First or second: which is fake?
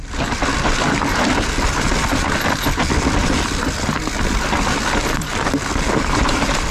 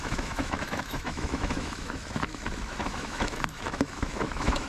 second